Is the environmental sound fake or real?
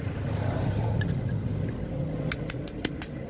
real